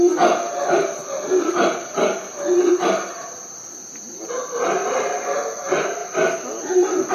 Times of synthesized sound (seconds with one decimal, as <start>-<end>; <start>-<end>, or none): 1.0-5.0; 6.0-7.1